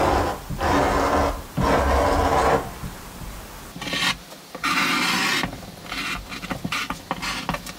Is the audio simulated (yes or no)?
no